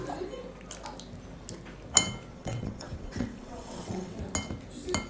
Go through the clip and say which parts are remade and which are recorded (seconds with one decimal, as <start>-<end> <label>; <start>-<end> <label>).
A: 0.0-2.3 recorded; 2.3-4.2 remade; 4.2-5.1 recorded